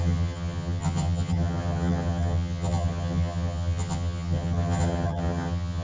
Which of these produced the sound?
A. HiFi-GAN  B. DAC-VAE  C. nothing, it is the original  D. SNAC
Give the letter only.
A